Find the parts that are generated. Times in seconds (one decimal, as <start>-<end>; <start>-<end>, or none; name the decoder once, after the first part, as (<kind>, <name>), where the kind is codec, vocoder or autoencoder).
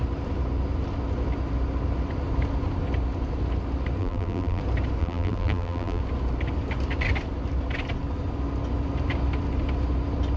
4.0-4.6 (vocoder, BigVGAN v2); 5.0-6.0